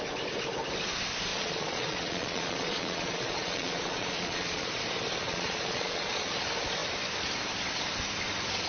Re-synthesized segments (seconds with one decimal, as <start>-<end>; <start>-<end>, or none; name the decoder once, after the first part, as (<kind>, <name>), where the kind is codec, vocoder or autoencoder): 1.3-4.7 (vocoder, Vocos); 5.3-6.3